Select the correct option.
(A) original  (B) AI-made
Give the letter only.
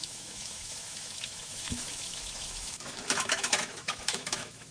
B